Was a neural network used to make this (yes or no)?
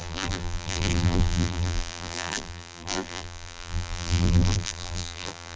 yes